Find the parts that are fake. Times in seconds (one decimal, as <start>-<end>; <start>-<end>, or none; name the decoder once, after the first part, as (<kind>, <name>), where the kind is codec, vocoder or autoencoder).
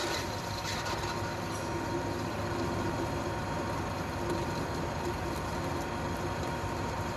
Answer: 0.0-0.9 (vocoder, BigVGAN v2)